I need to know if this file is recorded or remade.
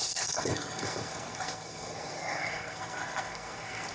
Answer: remade